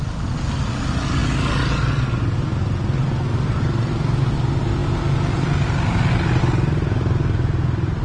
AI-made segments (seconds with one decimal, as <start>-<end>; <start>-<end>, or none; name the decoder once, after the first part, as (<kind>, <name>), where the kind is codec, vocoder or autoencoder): none